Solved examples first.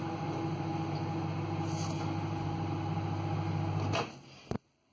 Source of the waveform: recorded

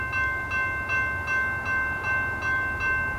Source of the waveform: recorded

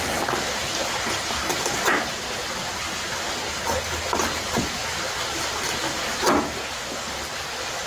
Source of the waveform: recorded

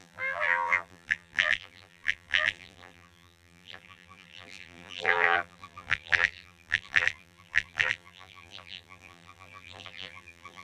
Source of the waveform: remade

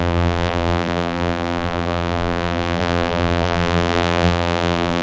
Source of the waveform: remade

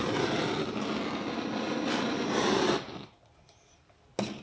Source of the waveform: recorded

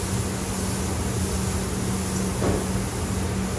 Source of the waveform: recorded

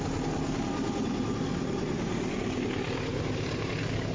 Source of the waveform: remade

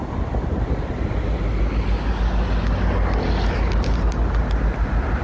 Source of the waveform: recorded